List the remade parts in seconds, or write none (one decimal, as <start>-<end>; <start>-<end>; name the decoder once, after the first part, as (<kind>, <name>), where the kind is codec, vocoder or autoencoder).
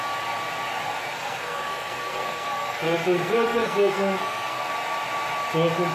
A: 1.2-4.7 (codec, SNAC)